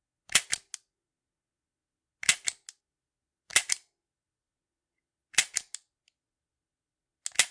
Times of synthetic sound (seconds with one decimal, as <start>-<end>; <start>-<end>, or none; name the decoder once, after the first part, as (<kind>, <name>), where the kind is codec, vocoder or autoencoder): none